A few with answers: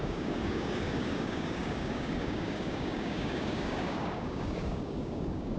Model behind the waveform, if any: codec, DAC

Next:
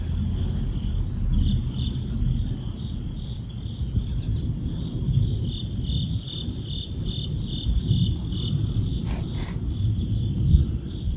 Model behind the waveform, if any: none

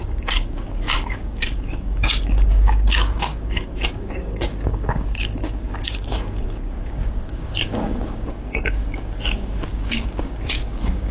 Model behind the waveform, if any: codec, DAC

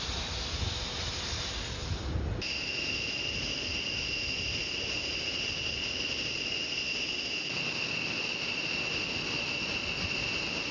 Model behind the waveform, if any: none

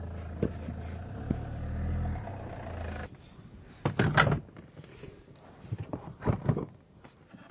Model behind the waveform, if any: none